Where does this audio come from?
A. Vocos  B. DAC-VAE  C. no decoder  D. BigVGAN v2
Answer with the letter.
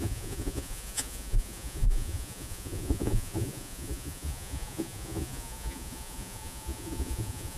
A